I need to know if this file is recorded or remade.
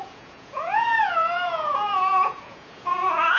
remade